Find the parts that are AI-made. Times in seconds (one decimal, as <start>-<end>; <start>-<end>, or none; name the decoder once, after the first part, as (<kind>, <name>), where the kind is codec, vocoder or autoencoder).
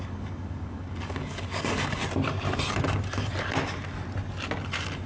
0.0-2.0 (codec, DAC)